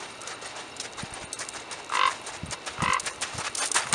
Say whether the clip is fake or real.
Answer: real